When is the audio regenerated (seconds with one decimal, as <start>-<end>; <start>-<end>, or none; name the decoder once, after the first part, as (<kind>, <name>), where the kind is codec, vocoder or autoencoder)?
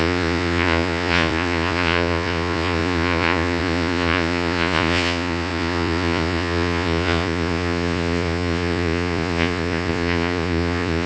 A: 0.0-11.1 (vocoder, Vocos)